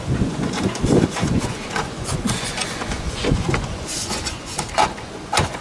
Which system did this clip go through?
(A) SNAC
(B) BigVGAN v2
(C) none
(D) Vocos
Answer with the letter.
D